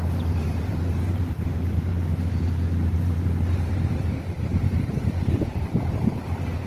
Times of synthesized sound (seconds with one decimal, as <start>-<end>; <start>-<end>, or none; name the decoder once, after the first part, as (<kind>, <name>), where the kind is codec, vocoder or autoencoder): 0.0-1.9 (vocoder, BigVGAN v2); 2.6-6.7